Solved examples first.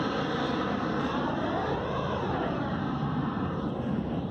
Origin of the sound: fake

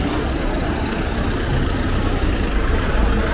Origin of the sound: real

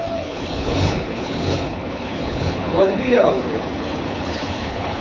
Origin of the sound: fake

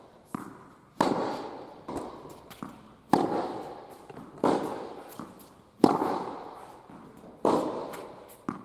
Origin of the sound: real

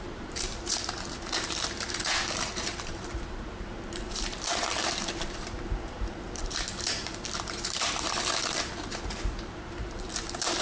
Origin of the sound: fake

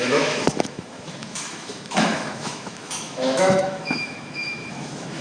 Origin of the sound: fake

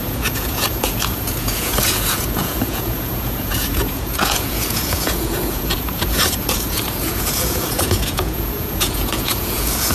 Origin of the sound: fake